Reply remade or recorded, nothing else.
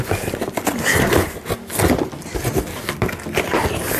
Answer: recorded